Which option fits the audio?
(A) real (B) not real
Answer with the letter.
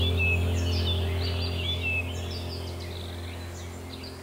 A